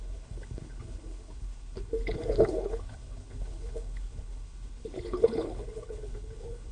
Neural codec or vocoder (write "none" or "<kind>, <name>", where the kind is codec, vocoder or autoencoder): codec, HILCodec